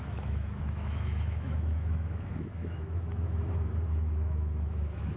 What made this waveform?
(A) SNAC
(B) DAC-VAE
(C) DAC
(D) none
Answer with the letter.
B